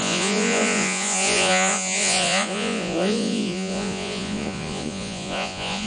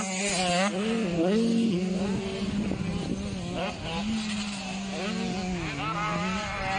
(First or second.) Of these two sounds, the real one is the second